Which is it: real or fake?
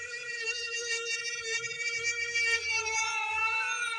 fake